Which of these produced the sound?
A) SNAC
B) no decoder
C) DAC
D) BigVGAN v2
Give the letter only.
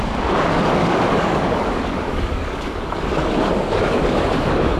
C